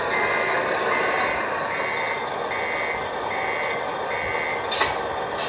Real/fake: real